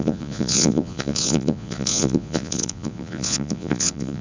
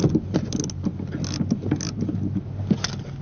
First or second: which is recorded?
second